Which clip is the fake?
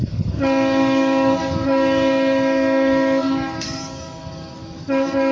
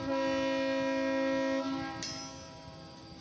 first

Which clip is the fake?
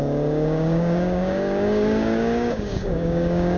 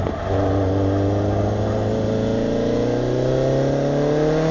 first